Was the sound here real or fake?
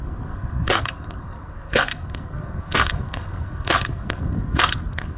fake